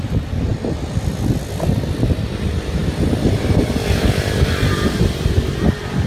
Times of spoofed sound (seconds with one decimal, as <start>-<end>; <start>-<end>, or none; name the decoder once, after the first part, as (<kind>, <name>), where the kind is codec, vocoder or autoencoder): none